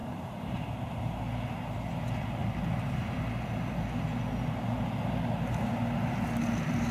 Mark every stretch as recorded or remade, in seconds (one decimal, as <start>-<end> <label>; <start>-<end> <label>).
0.0-1.2 remade; 1.2-6.9 recorded